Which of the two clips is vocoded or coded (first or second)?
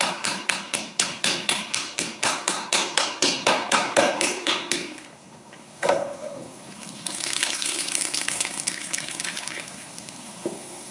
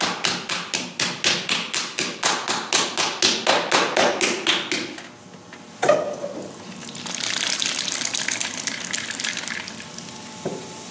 first